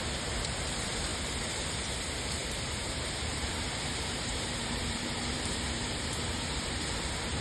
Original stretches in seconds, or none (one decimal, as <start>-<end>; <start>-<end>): none